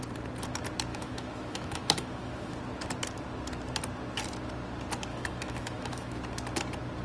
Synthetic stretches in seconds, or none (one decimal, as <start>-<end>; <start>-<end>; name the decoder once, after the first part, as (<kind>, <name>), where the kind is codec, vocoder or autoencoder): 0.9-2.6 (autoencoder, DAC-VAE); 5.1-6.2

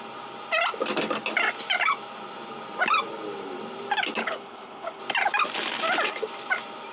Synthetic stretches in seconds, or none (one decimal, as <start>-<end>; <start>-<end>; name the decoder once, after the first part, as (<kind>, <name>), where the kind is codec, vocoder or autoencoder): 4.2-5.0 (codec, HILCodec)

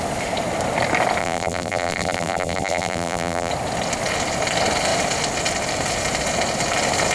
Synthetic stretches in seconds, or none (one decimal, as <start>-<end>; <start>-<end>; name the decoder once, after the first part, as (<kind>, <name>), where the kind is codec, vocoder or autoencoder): 1.2-3.5 (vocoder, BigVGAN v2)

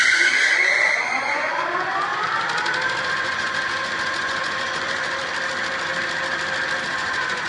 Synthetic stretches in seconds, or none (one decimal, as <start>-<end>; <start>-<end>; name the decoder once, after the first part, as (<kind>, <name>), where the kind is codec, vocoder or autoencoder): 0.0-2.1 (vocoder, Vocos); 3.1-5.2; 6.9-7.5

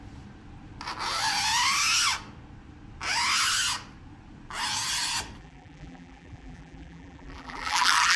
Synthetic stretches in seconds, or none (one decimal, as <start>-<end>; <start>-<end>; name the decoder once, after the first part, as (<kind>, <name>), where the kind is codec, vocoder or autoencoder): 5.4-8.2 (vocoder, BigVGAN v2)